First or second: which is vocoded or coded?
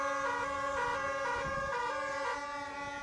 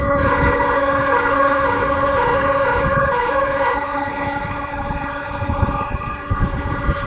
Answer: second